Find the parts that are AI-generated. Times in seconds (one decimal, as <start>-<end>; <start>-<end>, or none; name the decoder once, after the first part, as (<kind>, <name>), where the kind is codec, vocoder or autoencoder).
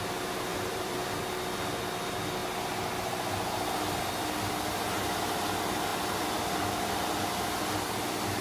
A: 0.5-1.2 (vocoder, BigVGAN v2); 5.9-7.3